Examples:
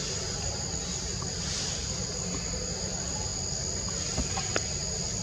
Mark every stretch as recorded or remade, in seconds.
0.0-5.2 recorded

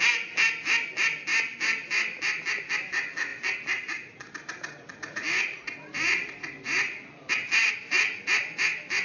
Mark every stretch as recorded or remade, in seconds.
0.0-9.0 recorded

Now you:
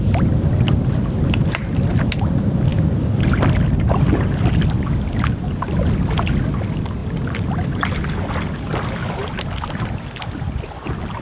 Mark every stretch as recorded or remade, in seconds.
0.0-11.2 recorded

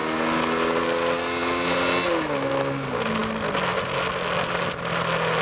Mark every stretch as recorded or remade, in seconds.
0.0-5.4 recorded